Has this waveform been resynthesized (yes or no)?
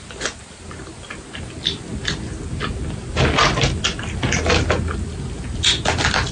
no